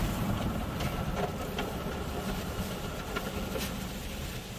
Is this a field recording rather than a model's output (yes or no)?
no